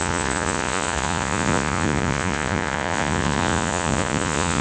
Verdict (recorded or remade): remade